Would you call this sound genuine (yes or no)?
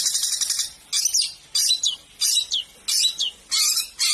yes